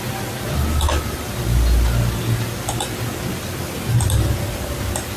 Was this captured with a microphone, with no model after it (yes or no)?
yes